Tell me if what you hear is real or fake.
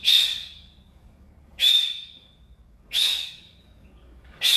fake